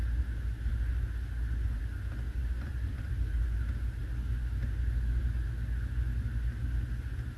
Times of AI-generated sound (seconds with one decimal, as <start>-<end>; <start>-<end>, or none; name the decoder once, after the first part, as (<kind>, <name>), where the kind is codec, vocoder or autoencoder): 2.4-3.5 (vocoder, BigVGAN v2)